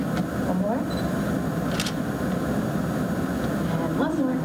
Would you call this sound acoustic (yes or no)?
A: yes